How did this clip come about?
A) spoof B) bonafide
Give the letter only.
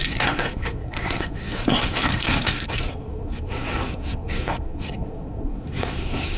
A